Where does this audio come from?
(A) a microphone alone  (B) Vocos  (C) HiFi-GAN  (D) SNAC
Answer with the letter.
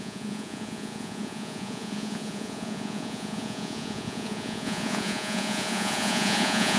B